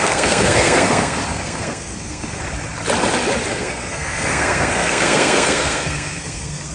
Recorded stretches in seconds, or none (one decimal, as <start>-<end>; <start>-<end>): 2.4-3.5